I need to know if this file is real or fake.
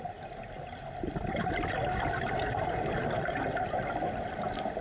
real